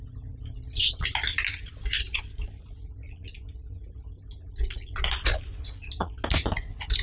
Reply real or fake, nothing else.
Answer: real